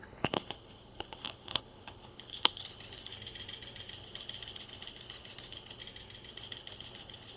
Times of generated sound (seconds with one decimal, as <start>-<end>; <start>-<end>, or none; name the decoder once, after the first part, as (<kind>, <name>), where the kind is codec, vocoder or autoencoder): 0.0-3.1 (codec, HILCodec); 3.9-5.8; 6.3-7.4

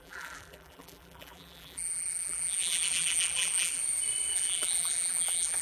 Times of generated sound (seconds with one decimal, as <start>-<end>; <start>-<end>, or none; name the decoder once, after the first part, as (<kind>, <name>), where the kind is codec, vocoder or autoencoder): 0.0-3.8 (vocoder, BigVGAN v2); 4.3-5.6